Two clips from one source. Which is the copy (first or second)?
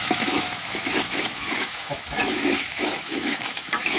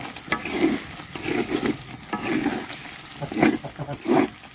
first